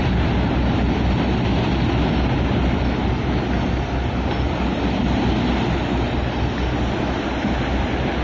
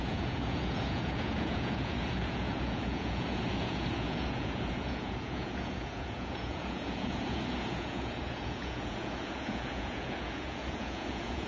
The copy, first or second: second